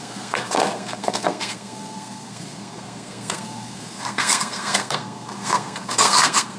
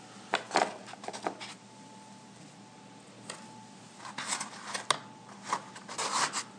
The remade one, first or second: first